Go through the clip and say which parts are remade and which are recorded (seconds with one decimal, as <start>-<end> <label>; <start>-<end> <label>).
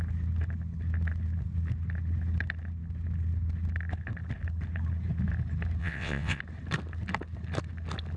0.0-5.8 recorded; 5.8-6.4 remade; 6.4-8.2 recorded